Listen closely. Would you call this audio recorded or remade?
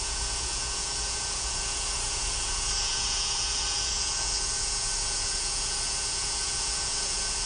remade